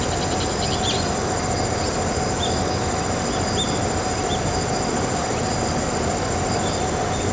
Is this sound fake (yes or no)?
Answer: no